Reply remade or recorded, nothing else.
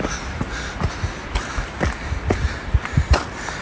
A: recorded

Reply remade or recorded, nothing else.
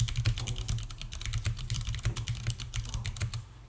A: recorded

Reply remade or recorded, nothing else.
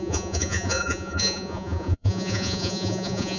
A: remade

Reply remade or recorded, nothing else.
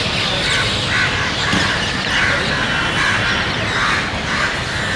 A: recorded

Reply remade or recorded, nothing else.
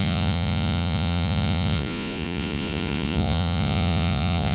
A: remade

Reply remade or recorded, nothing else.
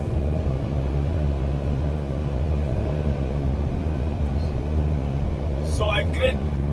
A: remade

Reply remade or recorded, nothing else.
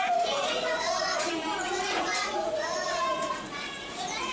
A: remade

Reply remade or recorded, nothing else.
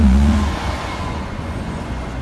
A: remade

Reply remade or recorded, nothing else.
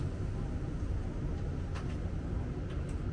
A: recorded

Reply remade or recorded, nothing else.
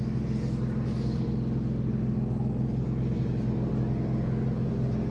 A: recorded